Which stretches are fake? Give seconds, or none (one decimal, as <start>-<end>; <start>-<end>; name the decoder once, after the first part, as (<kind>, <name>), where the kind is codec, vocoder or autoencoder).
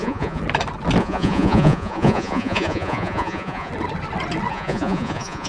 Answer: 0.0-0.4 (vocoder, Vocos); 1.0-3.7; 4.5-5.5